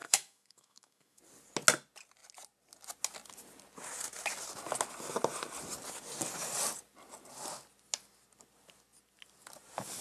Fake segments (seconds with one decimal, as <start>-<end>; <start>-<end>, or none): 0.0-1.2